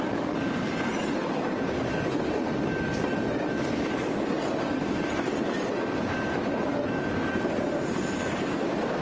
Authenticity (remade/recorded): recorded